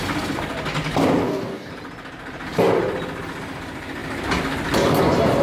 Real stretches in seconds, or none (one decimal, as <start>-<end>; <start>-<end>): 0.0-1.2; 1.7-5.4